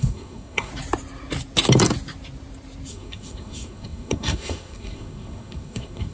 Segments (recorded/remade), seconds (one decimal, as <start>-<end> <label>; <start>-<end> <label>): 0.0-0.7 remade; 0.7-2.9 recorded; 2.9-6.1 remade